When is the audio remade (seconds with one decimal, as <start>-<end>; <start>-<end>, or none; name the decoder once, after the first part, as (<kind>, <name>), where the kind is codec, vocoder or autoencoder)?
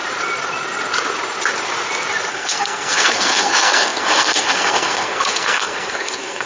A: 2.3-6.5 (codec, SNAC)